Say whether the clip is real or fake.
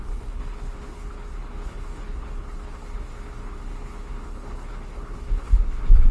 fake